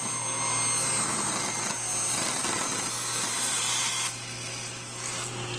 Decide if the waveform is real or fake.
real